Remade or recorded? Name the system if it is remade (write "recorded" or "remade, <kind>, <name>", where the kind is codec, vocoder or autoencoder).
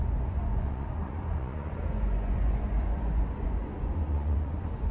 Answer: remade, vocoder, Vocos